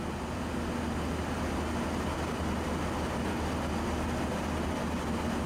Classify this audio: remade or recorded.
recorded